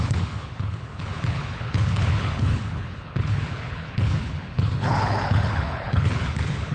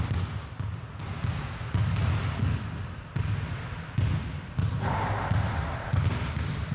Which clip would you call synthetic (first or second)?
first